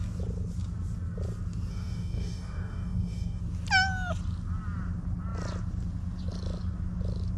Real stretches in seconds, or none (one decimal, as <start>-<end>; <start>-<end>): 0.0-1.7; 3.4-7.4